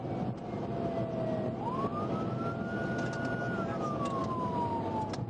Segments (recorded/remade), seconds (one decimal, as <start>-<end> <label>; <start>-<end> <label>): 0.0-5.3 recorded